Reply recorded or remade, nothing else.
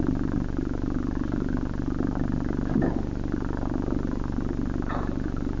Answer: recorded